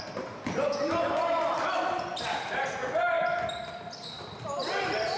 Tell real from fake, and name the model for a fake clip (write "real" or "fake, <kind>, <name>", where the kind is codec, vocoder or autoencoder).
fake, vocoder, BigVGAN v2